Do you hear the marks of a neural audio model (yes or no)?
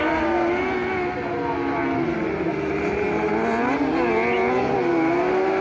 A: no